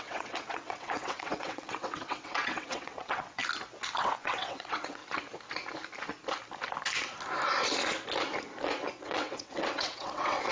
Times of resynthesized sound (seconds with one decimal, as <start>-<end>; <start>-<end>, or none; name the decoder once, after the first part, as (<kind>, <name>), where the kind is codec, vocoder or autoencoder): 0.0-3.4 (vocoder, WaveNeXt); 4.0-5.0; 9.0-10.5

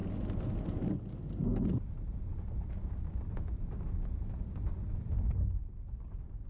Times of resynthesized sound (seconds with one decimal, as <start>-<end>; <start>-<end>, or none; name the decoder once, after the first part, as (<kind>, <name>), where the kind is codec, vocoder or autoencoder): none

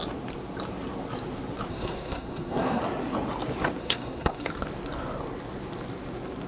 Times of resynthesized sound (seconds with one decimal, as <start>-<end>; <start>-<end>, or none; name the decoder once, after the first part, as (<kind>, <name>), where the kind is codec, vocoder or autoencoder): 1.7-2.8 (codec, SNAC); 3.8-4.5

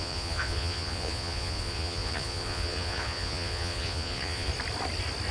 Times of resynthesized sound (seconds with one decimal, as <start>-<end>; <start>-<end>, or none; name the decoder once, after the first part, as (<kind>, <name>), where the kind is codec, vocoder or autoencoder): 0.0-4.5 (vocoder, Vocos)